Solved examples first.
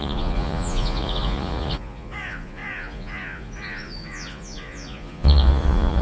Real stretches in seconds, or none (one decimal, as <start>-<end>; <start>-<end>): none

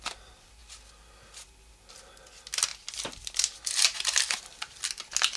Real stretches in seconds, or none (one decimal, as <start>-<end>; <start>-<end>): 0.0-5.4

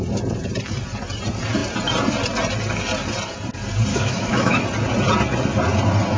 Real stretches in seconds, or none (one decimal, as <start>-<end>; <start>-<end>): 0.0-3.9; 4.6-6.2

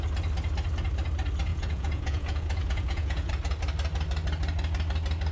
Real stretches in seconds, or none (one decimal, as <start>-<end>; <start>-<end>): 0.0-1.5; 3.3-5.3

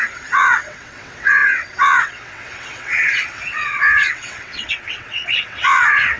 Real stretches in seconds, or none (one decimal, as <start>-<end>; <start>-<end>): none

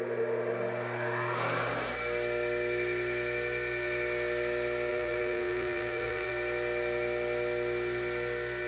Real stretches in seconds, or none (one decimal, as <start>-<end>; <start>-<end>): 0.0-4.9; 6.3-8.7

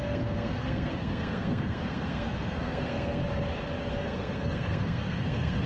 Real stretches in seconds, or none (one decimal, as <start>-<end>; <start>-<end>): 3.2-3.9

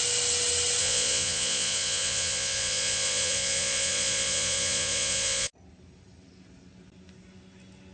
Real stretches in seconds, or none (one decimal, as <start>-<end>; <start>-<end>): 0.0-0.8; 5.5-7.9